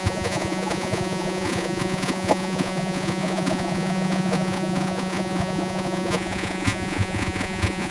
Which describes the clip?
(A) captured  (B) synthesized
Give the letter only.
B